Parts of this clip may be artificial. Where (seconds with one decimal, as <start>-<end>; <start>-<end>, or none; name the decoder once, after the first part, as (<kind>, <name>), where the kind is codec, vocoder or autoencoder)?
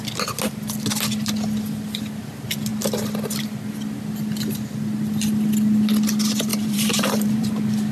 6.5-7.5 (vocoder, BigVGAN v2)